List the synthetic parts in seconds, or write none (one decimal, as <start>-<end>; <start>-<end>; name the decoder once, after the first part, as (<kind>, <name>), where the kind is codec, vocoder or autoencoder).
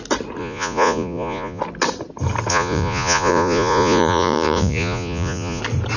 0.4-1.6 (vocoder, Vocos); 2.5-5.6